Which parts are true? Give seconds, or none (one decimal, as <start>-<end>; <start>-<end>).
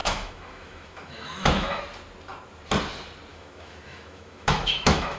1.8-3.3